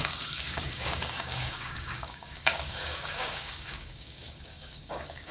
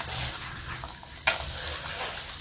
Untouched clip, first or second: second